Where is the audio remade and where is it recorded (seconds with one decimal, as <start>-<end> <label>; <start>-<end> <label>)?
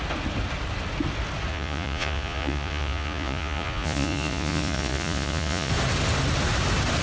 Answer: 0.0-1.5 recorded; 1.5-5.7 remade; 5.7-7.0 recorded